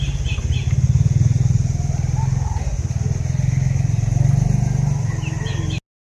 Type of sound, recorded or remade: recorded